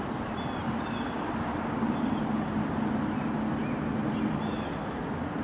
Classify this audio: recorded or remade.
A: recorded